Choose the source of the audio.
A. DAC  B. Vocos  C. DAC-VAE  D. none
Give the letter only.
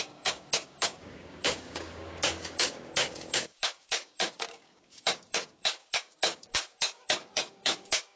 A